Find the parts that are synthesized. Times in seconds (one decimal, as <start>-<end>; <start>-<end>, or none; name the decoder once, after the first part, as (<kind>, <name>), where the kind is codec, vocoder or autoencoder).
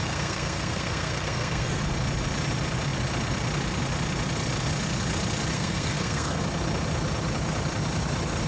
0.0-1.8 (codec, SNAC); 5.5-6.4